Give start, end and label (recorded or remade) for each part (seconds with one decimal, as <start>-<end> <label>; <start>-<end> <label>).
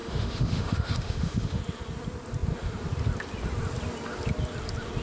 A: 0.0-1.6 remade; 1.6-5.0 recorded